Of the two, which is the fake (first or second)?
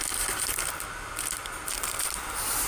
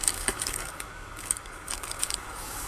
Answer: second